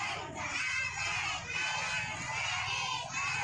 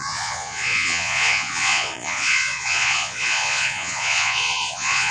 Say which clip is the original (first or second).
first